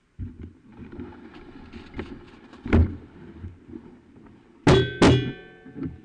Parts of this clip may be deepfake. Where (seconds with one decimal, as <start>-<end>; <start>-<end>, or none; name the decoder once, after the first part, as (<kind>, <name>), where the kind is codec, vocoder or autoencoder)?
none